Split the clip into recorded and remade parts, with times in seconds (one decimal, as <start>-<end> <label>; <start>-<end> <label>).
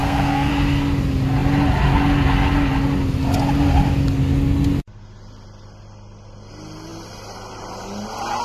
0.0-0.5 remade; 0.5-8.4 recorded